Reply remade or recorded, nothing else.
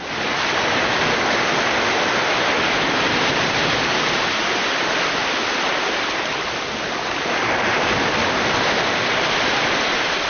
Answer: recorded